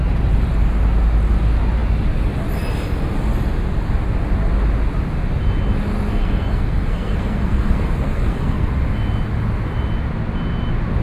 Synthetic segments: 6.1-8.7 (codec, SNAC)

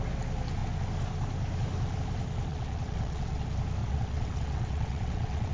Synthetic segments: 2.5-3.4 (vocoder, WaveNeXt); 3.8-5.5

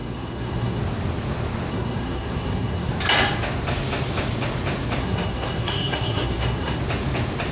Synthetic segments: 0.0-0.8 (codec, SNAC); 1.7-2.9; 5.0-6.8

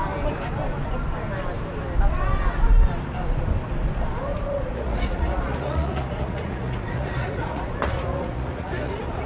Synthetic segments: 4.3-9.3 (vocoder, Vocos)

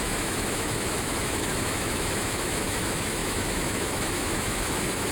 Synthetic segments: 0.0-5.1 (autoencoder, DAC-VAE)